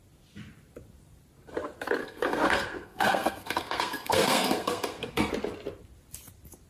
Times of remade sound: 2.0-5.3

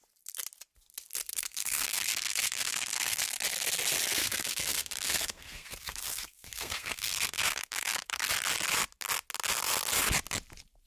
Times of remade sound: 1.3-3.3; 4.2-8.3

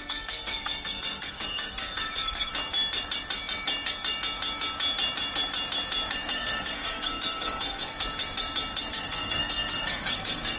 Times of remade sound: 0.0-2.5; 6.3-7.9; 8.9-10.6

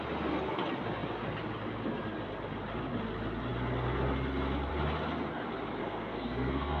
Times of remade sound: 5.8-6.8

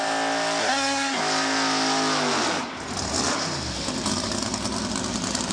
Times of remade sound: 0.6-1.2

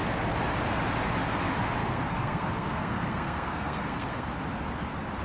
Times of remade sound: 1.8-4.3

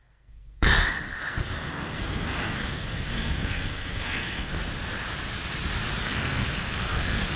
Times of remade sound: 0.0-4.6; 6.0-7.4

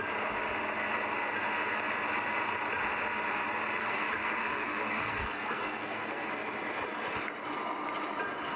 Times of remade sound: 3.8-6.3